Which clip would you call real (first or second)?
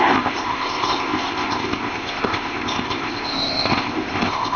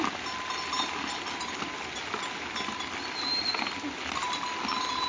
second